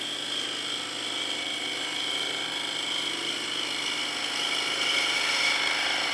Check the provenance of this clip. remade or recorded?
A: recorded